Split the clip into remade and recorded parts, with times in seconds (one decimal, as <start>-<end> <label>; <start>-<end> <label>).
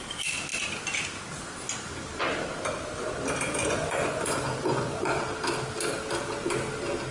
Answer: 0.0-3.6 recorded; 3.6-5.2 remade; 5.2-7.1 recorded